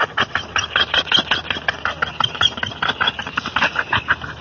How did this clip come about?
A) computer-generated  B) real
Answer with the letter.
B